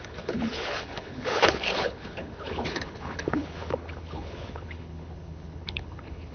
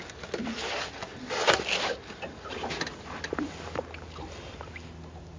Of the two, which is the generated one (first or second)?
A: first